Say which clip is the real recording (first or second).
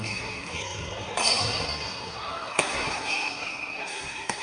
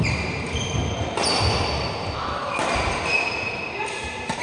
second